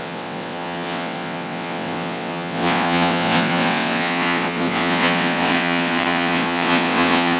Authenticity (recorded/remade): remade